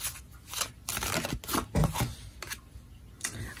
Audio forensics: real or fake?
real